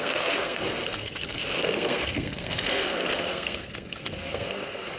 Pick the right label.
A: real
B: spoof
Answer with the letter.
B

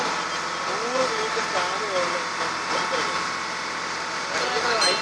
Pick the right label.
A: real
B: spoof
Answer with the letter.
A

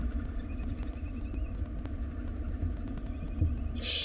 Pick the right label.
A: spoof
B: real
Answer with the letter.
B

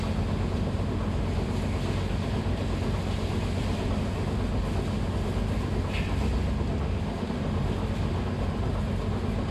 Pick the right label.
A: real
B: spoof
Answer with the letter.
A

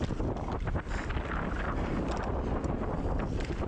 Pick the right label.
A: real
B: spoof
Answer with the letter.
A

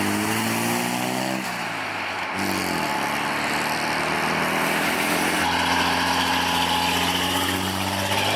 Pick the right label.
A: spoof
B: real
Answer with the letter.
B